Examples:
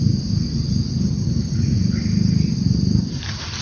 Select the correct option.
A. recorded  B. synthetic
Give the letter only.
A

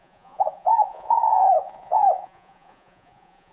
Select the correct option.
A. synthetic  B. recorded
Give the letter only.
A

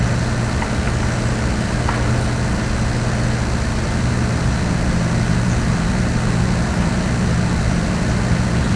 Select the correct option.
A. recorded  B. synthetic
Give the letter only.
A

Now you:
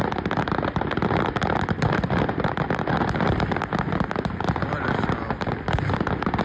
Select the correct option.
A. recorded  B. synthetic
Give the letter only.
B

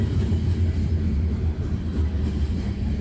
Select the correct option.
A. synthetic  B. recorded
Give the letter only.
B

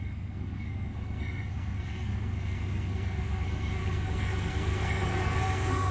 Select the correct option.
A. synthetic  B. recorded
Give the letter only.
A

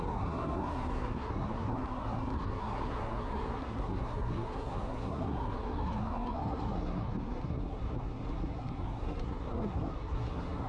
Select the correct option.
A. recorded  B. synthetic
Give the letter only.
B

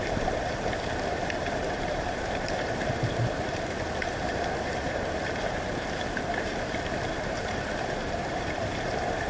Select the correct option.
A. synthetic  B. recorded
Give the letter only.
A